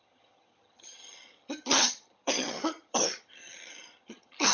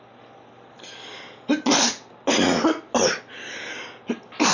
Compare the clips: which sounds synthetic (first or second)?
first